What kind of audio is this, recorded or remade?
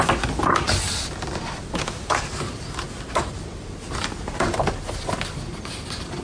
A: recorded